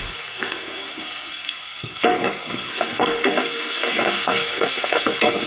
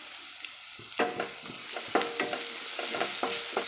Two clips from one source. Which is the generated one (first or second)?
first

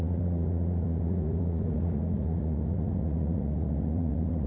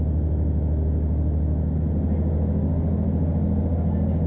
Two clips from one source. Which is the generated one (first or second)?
first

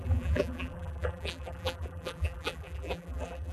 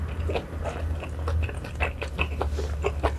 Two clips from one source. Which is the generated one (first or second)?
first